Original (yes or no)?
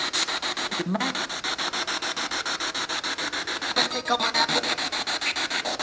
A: yes